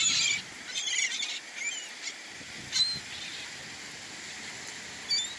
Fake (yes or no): no